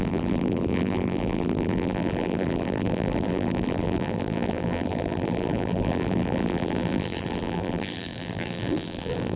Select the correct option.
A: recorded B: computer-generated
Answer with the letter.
B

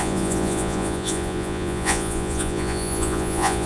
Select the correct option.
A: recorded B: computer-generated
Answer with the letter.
B